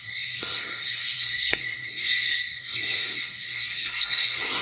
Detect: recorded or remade remade